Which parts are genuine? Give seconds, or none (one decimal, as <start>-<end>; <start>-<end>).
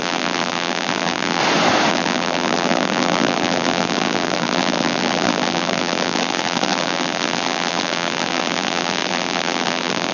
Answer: 1.4-1.9